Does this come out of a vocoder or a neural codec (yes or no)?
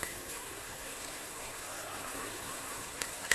yes